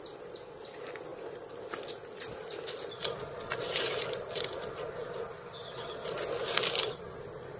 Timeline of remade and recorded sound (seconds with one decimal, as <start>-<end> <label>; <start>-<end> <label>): 0.0-7.6 recorded